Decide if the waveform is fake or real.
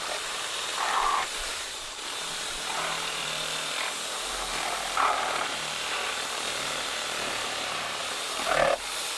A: fake